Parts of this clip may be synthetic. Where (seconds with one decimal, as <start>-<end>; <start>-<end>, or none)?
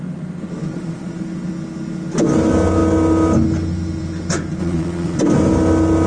0.7-1.2; 4.6-5.2